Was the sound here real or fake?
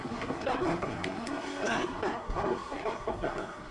fake